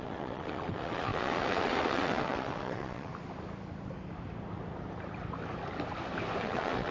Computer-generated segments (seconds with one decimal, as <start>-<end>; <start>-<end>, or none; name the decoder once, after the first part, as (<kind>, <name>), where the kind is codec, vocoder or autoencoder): 0.0-3.1 (vocoder, WaveNeXt); 6.4-6.9